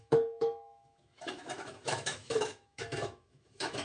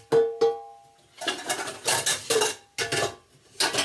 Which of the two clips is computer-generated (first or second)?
first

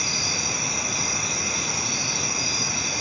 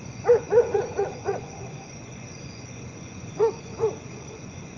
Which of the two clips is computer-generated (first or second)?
second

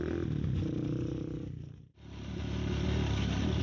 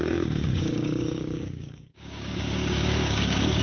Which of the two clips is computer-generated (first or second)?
second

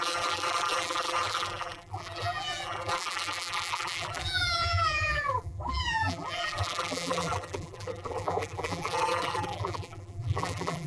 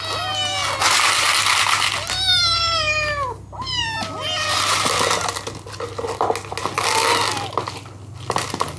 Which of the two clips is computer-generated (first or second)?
first